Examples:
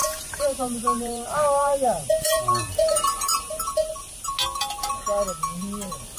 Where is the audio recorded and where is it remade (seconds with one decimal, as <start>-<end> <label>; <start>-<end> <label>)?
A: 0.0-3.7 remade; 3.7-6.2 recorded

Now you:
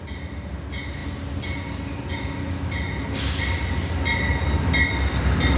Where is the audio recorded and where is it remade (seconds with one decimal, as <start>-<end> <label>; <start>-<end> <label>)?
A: 0.0-5.6 recorded

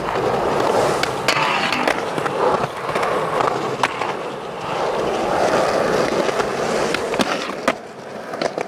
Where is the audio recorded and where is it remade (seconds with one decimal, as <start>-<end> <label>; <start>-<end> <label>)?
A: 0.0-8.7 recorded